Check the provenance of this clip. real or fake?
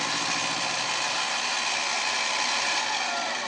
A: real